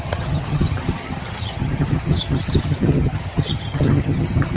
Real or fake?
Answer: fake